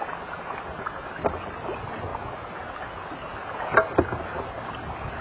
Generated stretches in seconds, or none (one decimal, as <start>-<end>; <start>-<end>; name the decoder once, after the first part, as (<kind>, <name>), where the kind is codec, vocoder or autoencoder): none